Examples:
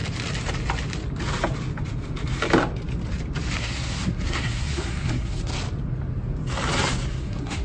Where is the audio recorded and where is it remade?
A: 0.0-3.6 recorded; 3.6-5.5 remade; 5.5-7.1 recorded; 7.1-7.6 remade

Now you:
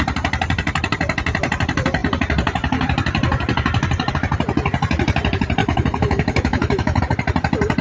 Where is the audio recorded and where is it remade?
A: 0.0-5.6 recorded; 5.6-7.0 remade; 7.0-7.8 recorded

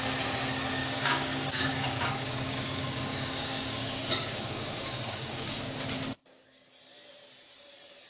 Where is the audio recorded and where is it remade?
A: 0.0-0.8 recorded; 0.8-5.6 remade; 5.6-8.1 recorded